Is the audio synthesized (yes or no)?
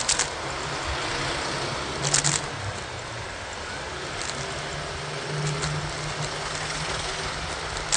no